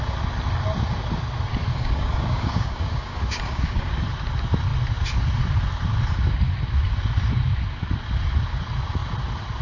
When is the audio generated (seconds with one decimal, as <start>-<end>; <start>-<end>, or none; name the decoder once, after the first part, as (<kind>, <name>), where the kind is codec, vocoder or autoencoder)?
1.7-3.9 (codec, DAC)